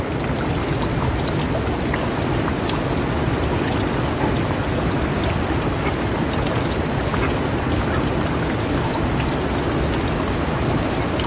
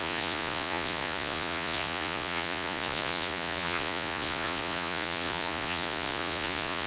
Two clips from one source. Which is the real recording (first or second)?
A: first